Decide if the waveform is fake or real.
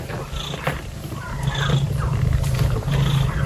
real